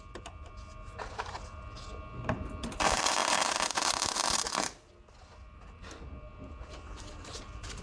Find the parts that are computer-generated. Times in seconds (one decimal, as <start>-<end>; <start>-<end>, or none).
none